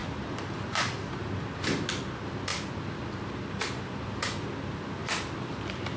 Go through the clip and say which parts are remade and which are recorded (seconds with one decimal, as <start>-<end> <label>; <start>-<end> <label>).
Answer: 0.0-1.3 remade; 1.3-6.0 recorded